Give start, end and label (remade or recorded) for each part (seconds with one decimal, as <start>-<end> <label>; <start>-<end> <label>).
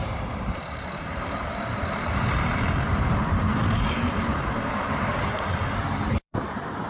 0.0-6.9 remade